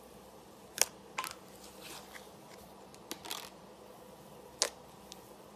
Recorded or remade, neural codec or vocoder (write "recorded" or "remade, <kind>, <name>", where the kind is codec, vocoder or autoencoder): recorded